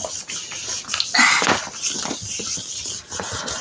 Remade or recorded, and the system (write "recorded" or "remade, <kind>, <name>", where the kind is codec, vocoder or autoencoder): recorded